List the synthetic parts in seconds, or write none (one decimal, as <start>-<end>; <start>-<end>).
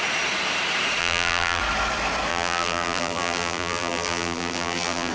1.0-1.6; 2.3-5.1